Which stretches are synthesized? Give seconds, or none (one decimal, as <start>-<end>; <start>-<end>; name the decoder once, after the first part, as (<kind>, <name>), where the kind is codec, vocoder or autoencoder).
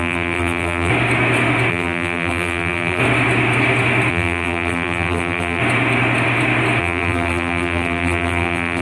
0.0-0.9 (vocoder, BigVGAN v2); 1.7-3.0; 4.1-5.6; 6.8-8.8